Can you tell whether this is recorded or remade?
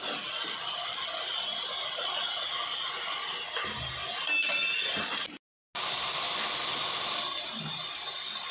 recorded